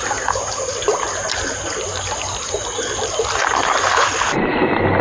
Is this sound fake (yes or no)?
no